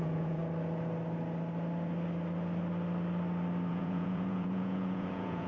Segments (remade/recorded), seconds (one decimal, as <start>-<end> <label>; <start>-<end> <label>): 0.0-0.4 remade; 0.4-3.7 recorded; 3.7-5.5 remade